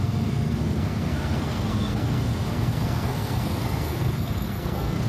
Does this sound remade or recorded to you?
remade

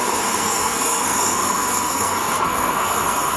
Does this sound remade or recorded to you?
remade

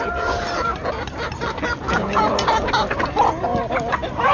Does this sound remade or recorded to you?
recorded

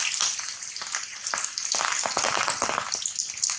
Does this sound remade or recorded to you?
recorded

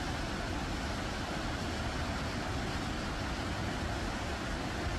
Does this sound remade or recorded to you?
recorded